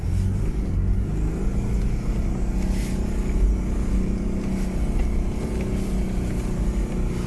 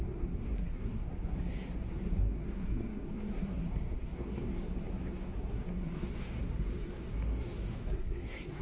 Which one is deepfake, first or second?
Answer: second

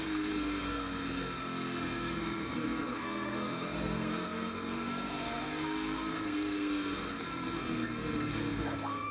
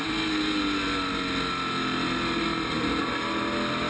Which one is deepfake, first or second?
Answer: first